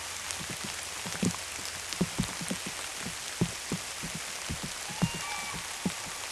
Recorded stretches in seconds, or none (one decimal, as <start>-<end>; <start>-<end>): 0.0-6.3